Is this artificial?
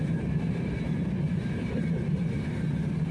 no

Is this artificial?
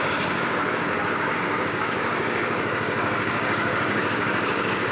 yes